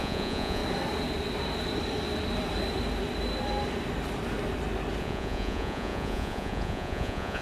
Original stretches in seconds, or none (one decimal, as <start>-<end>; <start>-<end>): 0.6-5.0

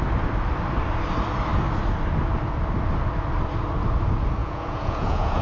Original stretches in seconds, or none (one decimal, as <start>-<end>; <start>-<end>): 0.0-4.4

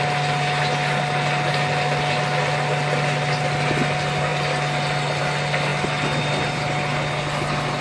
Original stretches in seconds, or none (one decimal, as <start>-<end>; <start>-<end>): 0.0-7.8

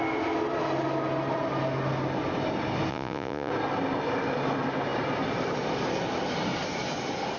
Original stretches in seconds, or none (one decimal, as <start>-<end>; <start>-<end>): 0.0-2.9; 3.5-7.4

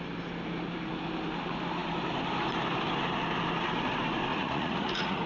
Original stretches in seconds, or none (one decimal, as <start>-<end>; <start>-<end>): 0.0-4.3

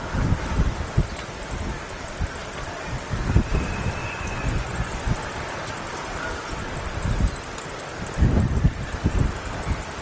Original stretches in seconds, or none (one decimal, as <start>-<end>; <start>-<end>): 0.0-4.0; 4.9-10.0

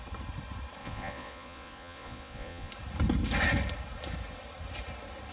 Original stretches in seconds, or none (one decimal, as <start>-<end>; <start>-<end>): 0.0-0.8; 2.7-5.3